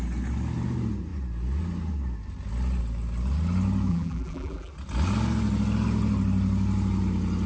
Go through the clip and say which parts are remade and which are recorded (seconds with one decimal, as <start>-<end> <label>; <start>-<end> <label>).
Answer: 0.0-3.9 recorded; 3.9-4.7 remade; 4.7-7.5 recorded

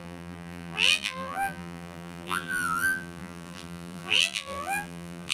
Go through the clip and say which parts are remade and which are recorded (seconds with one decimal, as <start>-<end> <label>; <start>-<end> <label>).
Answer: 0.0-5.3 remade

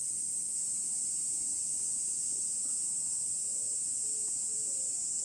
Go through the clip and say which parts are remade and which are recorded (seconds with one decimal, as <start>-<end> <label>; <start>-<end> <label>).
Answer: 0.0-0.7 remade; 0.7-1.5 recorded; 1.5-2.5 remade; 2.5-3.5 recorded; 3.5-4.3 remade; 4.3-5.2 recorded